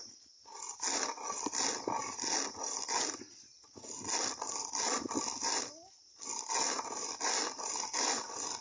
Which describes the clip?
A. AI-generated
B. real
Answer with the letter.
B